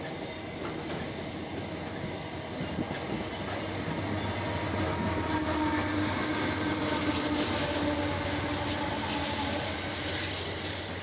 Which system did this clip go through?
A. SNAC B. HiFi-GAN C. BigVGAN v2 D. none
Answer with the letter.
D